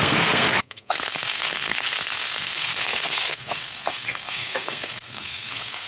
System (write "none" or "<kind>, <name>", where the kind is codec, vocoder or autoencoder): codec, SNAC